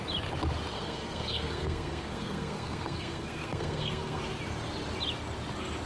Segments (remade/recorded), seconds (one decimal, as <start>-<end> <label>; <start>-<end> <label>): 0.0-0.7 recorded; 0.7-4.2 remade; 4.2-5.9 recorded